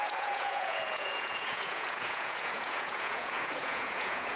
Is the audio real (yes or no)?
no